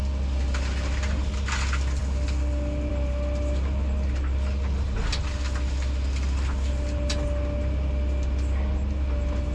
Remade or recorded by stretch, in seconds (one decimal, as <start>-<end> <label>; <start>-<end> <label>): 0.0-9.5 recorded